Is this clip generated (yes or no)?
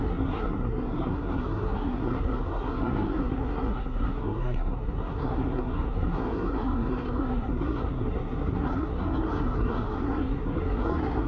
yes